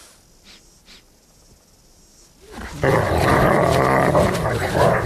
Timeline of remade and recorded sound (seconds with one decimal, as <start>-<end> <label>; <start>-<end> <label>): 0.0-5.1 recorded